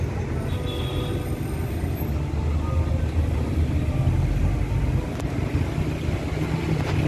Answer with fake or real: real